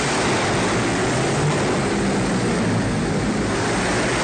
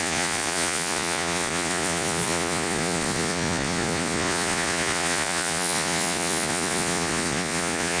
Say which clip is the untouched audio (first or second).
first